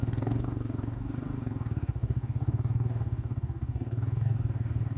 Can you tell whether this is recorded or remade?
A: remade